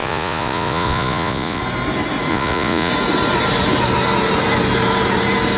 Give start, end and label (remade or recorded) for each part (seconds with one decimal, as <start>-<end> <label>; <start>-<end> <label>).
0.0-1.6 remade; 1.6-2.3 recorded; 2.3-2.9 remade; 2.9-5.6 recorded